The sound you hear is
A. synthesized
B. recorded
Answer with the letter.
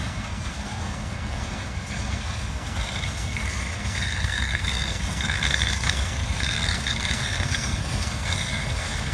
A